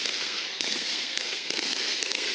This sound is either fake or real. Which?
fake